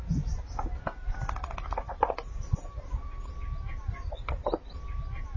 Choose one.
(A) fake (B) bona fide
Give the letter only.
B